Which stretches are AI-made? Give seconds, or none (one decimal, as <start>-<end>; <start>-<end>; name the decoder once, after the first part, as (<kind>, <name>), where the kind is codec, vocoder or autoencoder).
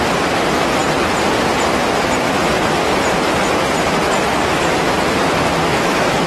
5.6-6.3 (autoencoder, DAC-VAE)